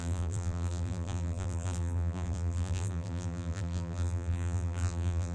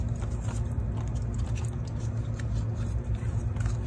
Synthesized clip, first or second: first